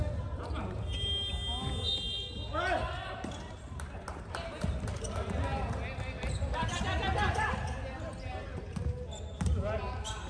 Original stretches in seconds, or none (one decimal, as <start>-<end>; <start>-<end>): 0.0-10.3